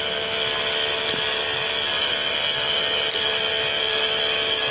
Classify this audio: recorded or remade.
recorded